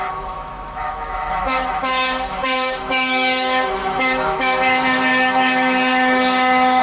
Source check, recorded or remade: remade